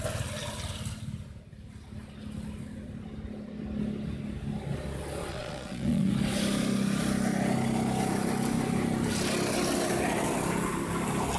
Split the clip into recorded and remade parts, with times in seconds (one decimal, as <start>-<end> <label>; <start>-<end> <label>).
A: 0.0-5.3 recorded; 5.3-6.1 remade; 6.1-11.4 recorded